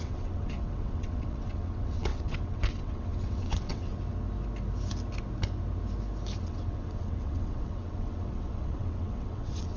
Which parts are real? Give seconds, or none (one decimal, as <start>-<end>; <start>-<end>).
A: 3.9-6.4